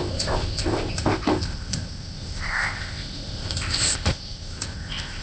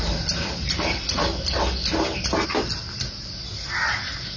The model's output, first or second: first